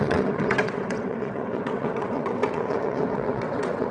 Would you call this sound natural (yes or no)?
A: no